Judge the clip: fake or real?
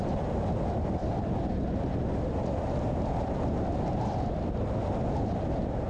real